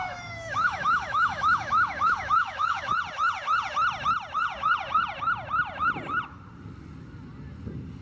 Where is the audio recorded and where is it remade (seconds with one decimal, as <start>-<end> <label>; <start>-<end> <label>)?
0.0-2.9 remade; 2.9-8.0 recorded